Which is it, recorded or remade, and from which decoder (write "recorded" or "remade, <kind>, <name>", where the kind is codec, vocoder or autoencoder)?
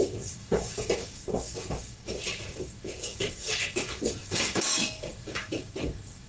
remade, codec, DAC